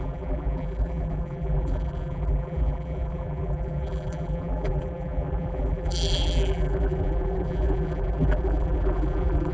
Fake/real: fake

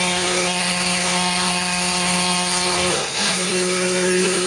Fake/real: fake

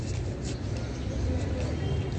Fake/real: real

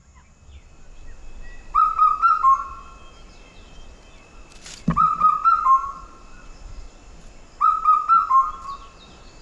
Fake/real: real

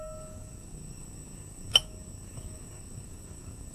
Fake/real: fake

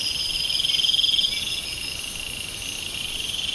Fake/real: real